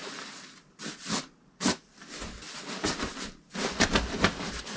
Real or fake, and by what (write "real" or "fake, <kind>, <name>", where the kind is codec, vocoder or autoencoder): real